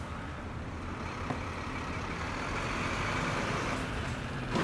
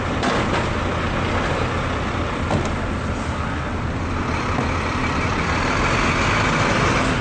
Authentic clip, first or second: second